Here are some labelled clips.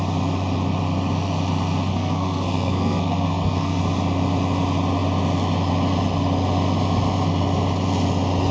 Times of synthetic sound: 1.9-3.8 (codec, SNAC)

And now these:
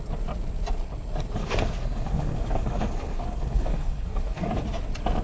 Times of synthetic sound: 1.4-4.5 (codec, SNAC)

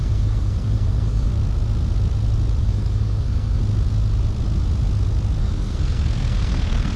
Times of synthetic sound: 0.0-1.3 (codec, SNAC); 2.6-3.6; 5.4-7.0

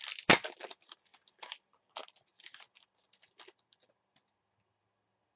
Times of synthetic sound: none